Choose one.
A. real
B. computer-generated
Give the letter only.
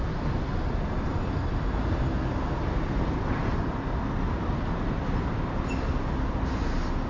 A